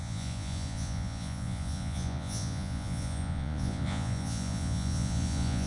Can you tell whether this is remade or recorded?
remade